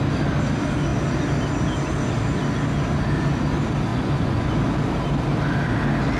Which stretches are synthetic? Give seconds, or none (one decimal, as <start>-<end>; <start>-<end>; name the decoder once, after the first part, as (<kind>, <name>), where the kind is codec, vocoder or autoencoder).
3.9-4.5 (vocoder, Vocos)